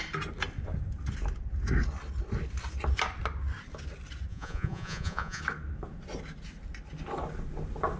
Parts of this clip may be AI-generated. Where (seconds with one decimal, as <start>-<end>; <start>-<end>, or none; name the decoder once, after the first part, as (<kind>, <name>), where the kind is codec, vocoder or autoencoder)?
4.3-5.4 (vocoder, Vocos)